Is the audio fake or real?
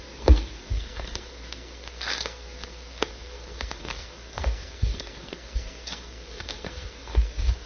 fake